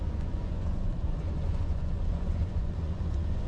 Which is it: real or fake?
fake